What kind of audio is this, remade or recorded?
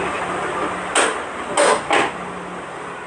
recorded